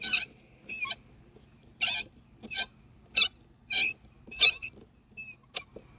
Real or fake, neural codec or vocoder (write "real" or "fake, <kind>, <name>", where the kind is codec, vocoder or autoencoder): real